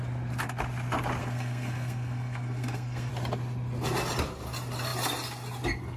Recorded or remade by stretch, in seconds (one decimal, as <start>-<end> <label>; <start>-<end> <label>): 0.0-1.2 recorded; 1.2-3.1 remade; 3.1-6.0 recorded